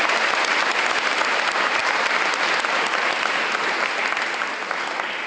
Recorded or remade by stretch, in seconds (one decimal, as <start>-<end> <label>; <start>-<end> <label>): 0.0-1.8 recorded; 1.8-3.7 remade; 3.7-5.3 recorded